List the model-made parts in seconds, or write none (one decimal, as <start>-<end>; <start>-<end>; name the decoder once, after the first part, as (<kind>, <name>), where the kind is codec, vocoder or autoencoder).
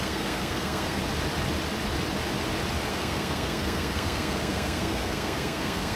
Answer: 0.0-1.0 (codec, SNAC); 2.9-6.0